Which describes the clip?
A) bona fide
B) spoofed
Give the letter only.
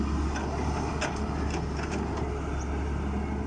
A